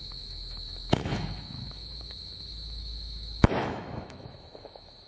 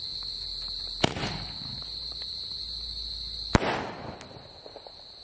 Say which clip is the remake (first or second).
first